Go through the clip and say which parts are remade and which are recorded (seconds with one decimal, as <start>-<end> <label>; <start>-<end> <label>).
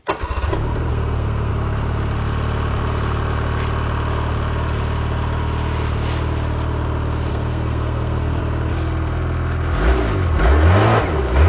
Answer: 0.0-0.9 recorded; 0.9-1.5 remade; 1.5-7.3 recorded; 7.3-8.4 remade; 8.4-11.5 recorded